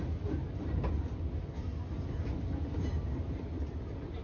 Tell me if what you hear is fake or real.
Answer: real